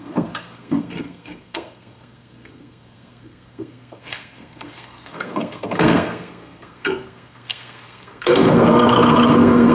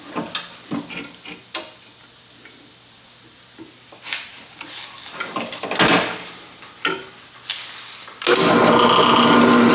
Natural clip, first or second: second